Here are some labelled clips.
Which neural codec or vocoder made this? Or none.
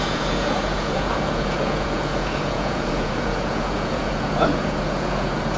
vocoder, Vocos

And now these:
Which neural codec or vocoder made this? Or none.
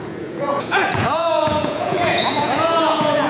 vocoder, Vocos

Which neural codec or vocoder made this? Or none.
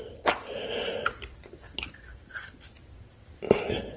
none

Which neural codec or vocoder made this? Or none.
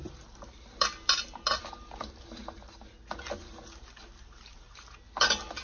none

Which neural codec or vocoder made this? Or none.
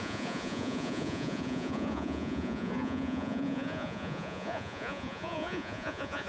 vocoder, Vocos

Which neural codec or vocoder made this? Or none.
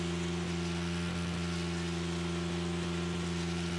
none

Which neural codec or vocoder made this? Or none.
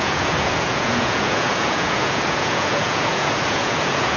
vocoder, Vocos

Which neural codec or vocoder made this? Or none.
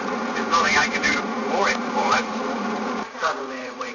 vocoder, Vocos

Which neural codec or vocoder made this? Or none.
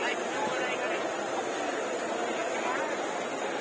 none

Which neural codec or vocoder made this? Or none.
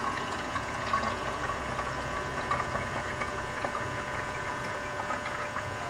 vocoder, Vocos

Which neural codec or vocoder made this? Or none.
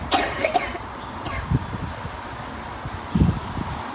none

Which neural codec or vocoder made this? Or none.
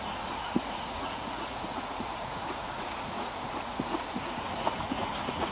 vocoder, Vocos